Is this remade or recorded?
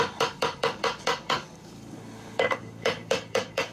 remade